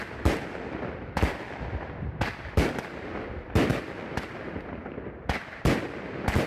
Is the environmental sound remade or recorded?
recorded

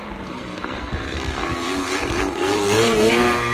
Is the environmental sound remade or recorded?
remade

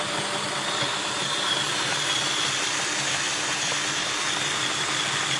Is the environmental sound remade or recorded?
recorded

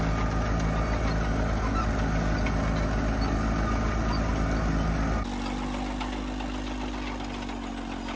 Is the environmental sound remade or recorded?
recorded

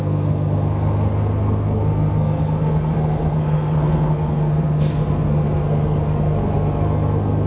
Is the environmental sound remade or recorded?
remade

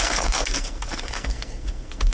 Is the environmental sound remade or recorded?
remade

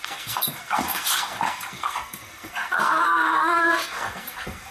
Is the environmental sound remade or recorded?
remade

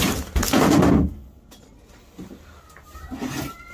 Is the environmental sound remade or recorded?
recorded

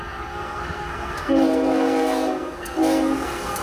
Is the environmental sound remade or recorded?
remade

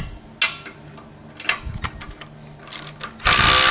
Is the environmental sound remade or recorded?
recorded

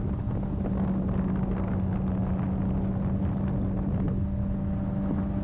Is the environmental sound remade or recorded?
recorded